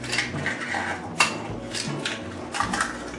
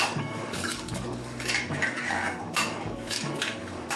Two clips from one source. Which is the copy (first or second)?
second